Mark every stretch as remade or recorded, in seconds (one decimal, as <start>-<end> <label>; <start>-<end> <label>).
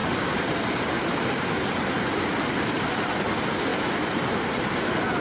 0.0-3.7 recorded; 3.7-4.7 remade; 4.7-5.2 recorded